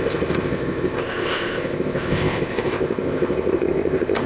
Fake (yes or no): yes